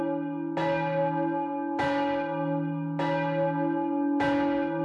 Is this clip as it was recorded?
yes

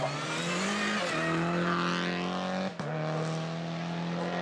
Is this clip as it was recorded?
yes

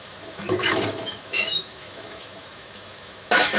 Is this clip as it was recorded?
no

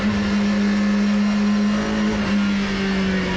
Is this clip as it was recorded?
yes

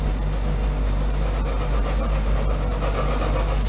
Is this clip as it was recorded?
yes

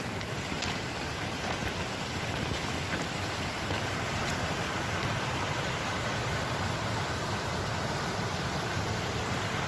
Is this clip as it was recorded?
yes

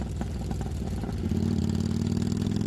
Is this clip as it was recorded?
yes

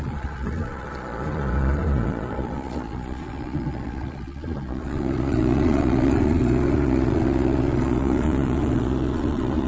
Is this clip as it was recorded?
no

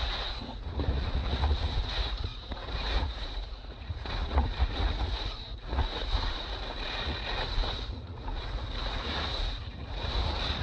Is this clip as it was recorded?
no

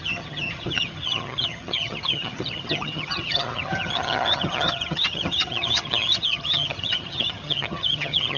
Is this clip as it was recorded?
no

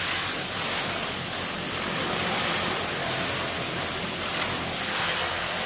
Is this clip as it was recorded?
yes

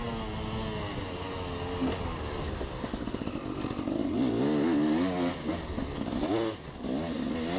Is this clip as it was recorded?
yes